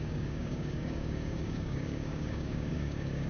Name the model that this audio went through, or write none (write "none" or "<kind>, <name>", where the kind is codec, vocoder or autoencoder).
codec, DAC